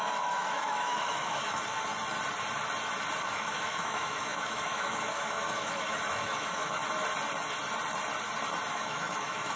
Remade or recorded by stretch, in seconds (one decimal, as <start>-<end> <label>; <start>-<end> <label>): 0.0-1.9 remade; 1.9-3.2 recorded; 3.2-6.8 remade; 6.8-8.7 recorded; 8.7-9.6 remade